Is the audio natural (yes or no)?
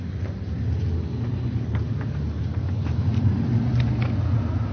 yes